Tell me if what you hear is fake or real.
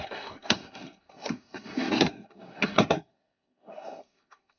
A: fake